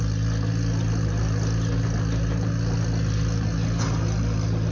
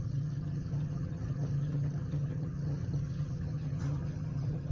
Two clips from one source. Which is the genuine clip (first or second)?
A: first